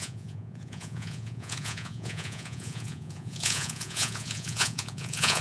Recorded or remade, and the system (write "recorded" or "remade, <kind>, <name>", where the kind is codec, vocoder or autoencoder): remade, vocoder, Vocos